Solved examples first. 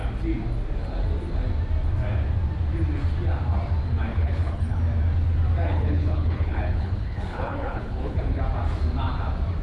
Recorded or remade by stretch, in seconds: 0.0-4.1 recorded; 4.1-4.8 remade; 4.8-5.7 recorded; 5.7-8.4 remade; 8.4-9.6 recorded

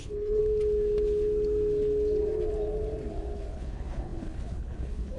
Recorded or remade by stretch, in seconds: 0.0-0.4 remade; 0.4-3.5 recorded; 3.5-5.2 remade

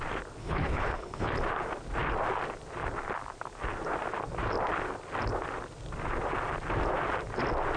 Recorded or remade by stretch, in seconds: 0.0-0.4 recorded; 0.4-1.3 remade; 1.3-7.8 recorded